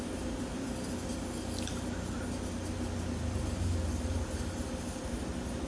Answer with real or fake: real